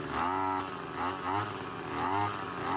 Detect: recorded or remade recorded